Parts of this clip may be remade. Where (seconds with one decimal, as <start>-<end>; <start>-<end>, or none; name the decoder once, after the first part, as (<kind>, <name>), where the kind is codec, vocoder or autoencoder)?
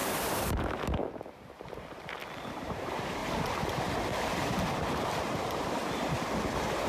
0.0-2.2 (vocoder, BigVGAN v2); 2.7-5.8; 6.5-6.9